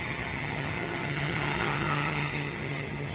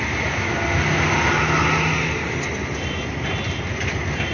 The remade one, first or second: first